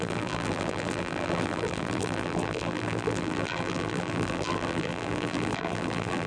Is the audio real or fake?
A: fake